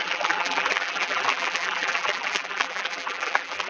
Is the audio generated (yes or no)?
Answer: yes